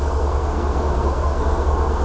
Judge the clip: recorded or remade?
remade